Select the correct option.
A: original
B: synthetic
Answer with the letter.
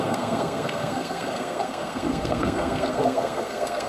B